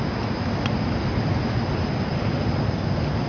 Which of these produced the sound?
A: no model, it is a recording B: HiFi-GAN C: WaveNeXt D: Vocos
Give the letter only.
A